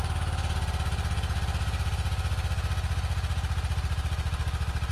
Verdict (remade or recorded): recorded